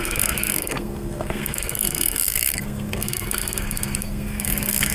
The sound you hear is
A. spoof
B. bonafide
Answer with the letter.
A